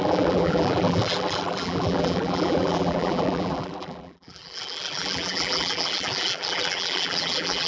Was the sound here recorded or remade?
remade